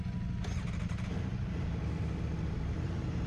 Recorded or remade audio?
recorded